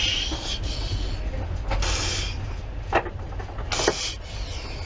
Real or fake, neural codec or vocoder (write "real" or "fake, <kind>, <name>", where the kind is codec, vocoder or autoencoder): real